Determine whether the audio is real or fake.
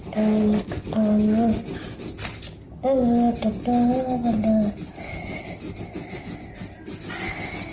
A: real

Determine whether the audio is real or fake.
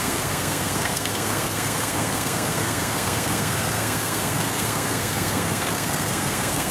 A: fake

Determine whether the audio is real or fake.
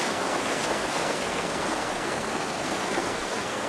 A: fake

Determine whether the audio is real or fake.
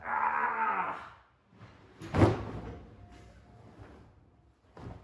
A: real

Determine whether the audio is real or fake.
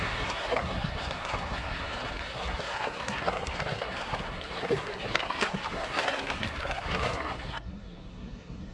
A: fake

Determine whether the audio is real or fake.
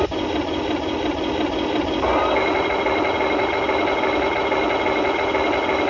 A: real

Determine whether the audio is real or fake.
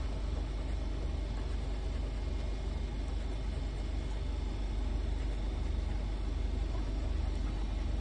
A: real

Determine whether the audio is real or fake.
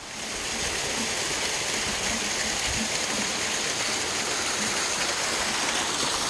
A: real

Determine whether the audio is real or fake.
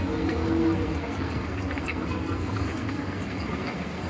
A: fake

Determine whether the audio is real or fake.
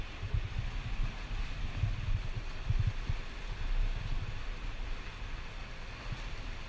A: real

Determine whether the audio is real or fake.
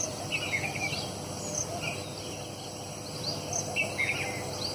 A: real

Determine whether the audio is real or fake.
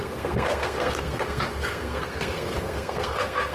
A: fake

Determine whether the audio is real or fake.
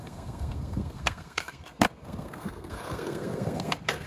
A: fake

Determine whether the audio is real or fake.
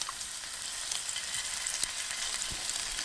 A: real